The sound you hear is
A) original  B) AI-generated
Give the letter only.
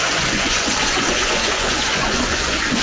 B